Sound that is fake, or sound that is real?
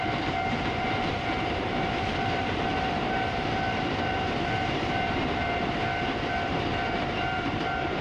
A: fake